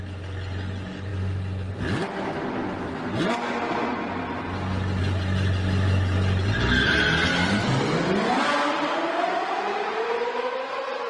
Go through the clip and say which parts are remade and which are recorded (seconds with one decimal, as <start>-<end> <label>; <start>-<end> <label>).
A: 0.0-11.1 recorded